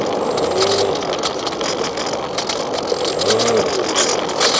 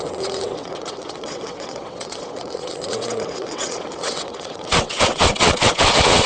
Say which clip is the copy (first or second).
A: second